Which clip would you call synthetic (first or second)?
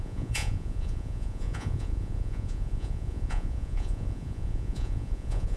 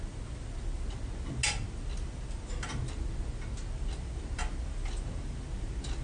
first